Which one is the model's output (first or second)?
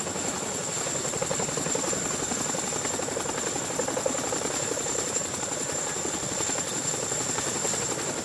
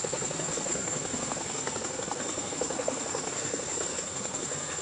second